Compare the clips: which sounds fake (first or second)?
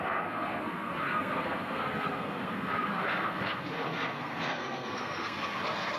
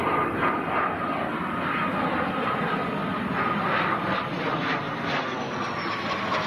first